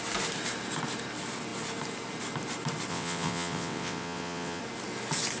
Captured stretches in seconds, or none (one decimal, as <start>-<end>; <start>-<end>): 0.0-2.9; 4.6-5.4